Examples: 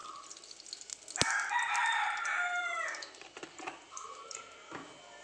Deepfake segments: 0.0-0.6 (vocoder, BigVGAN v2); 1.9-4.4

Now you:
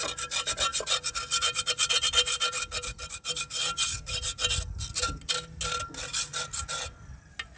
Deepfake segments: none

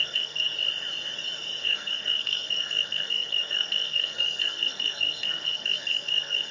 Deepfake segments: 0.0-0.5 (codec, SNAC); 1.6-6.5